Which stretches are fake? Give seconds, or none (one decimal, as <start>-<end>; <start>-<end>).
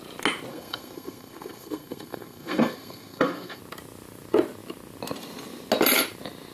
0.5-3.6